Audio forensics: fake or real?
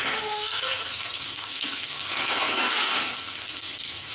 fake